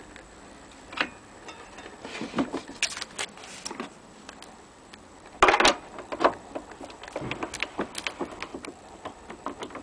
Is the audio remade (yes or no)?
no